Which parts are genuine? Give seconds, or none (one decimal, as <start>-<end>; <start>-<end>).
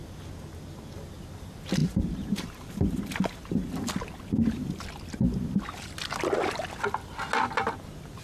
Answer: 0.0-1.8; 3.7-8.2